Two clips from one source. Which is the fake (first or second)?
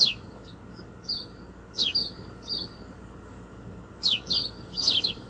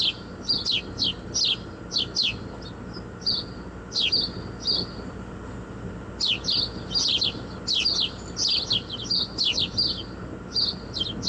first